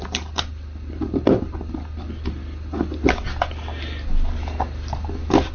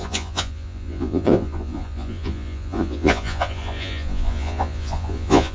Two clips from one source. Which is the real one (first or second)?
first